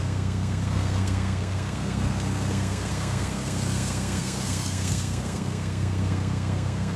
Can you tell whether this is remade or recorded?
remade